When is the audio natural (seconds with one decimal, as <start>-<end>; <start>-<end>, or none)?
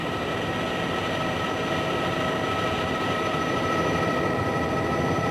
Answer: 0.0-2.8